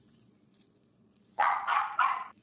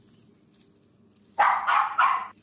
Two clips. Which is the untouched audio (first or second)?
second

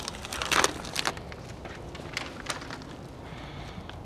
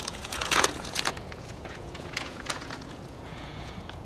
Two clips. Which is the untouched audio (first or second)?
first